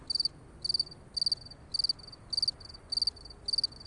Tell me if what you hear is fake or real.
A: real